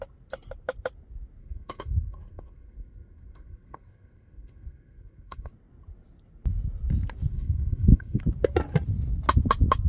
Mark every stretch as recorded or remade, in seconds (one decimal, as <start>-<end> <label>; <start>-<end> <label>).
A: 0.0-1.4 recorded; 1.4-5.5 remade; 5.5-7.3 recorded; 7.3-8.2 remade; 8.2-9.9 recorded